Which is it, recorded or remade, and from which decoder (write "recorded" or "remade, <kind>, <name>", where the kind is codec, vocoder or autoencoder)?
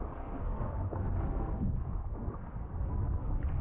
remade, codec, SNAC